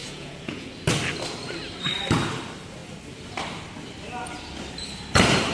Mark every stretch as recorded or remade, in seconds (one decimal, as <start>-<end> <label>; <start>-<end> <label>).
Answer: 0.0-0.7 remade; 0.7-5.5 recorded